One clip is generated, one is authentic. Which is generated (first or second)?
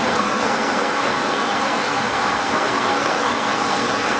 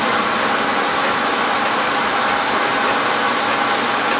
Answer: first